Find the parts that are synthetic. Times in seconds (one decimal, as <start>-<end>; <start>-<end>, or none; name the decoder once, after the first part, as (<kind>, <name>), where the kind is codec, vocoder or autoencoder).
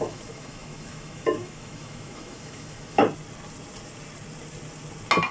0.0-3.0 (autoencoder, DAC-VAE)